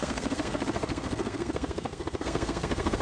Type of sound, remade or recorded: remade